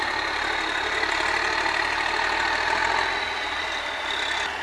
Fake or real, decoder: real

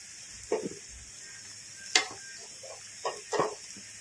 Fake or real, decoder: real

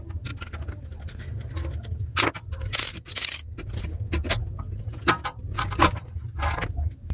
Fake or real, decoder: real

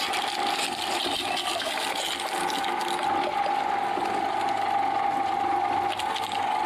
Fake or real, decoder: real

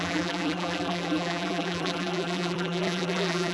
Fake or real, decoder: fake, vocoder, BigVGAN v2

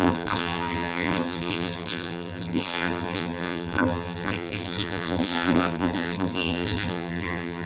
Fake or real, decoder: fake, vocoder, BigVGAN v2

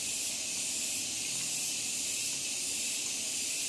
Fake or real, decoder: fake, vocoder, BigVGAN v2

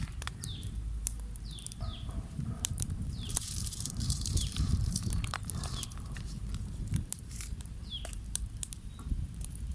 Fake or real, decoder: fake, vocoder, BigVGAN v2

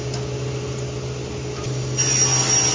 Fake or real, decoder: real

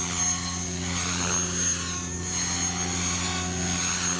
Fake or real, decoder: real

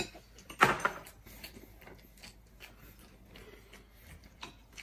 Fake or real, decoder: real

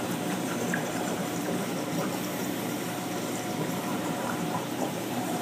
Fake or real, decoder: fake, vocoder, BigVGAN v2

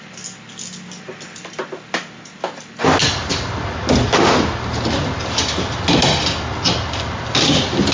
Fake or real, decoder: real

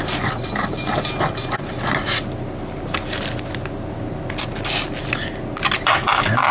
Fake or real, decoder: real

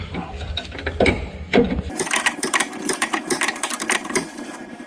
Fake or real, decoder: fake, vocoder, BigVGAN v2